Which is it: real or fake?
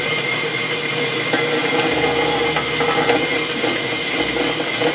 real